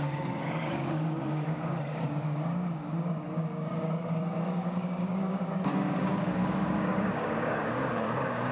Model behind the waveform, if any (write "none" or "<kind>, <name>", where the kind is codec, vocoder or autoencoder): codec, DAC